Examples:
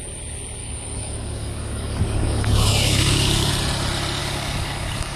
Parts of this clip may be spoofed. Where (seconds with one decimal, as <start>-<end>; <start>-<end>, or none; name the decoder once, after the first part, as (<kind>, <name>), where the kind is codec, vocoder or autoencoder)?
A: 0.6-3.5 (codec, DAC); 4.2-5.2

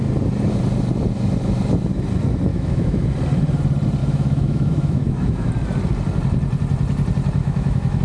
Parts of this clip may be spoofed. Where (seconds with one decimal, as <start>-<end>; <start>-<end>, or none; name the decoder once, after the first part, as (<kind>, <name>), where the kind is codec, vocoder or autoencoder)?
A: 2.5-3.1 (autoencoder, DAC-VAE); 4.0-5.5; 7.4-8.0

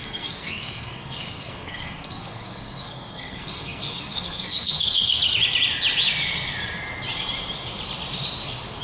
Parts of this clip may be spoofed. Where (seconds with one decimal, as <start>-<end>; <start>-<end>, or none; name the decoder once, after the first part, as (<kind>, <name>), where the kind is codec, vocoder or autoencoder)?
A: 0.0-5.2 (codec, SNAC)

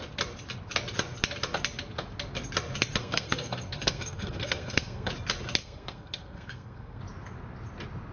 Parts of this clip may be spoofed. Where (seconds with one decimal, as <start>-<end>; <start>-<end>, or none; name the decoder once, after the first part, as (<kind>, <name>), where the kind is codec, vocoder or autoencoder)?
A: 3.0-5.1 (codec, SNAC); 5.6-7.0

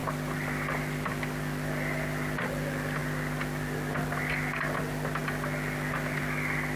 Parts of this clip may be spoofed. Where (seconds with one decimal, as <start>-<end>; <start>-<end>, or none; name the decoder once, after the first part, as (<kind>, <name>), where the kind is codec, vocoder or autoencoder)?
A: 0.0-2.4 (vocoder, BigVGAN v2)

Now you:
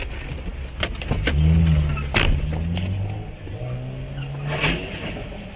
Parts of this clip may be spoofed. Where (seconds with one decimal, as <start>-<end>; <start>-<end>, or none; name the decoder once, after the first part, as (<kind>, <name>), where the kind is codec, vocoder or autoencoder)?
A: none

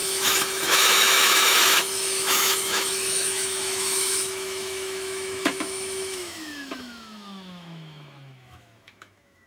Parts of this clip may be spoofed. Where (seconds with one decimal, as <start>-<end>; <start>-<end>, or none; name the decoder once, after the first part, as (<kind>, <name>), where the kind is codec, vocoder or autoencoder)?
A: 0.0-9.5 (autoencoder, DAC-VAE)